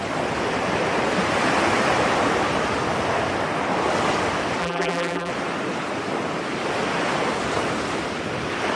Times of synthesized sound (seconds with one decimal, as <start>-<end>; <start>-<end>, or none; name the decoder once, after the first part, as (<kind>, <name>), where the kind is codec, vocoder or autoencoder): 4.6-5.3 (vocoder, BigVGAN v2)